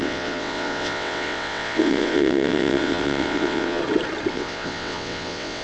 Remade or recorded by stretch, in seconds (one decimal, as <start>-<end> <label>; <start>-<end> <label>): 0.0-3.8 remade; 3.8-4.3 recorded; 4.3-5.6 remade